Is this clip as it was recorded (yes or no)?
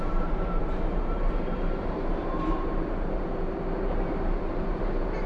no